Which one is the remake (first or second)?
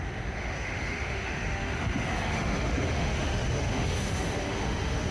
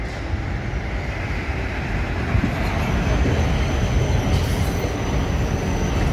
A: first